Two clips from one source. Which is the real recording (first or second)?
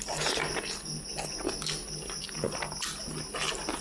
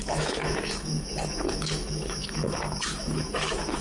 first